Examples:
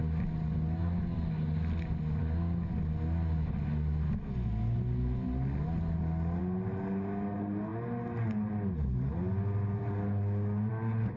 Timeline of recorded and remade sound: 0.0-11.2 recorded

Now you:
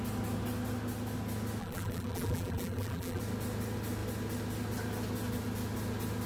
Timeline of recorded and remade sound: 0.0-1.6 recorded; 1.6-3.2 remade; 3.2-6.3 recorded

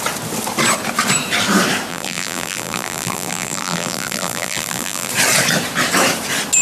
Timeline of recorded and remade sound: 0.0-1.9 recorded; 1.9-5.1 remade; 5.1-6.6 recorded